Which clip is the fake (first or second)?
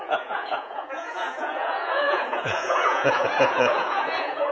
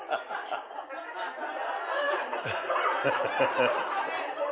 first